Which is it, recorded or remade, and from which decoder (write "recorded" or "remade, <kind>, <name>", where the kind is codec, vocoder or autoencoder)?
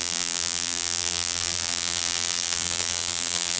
remade, vocoder, BigVGAN v2